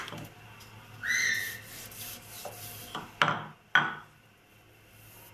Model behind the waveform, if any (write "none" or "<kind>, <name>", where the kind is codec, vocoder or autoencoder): none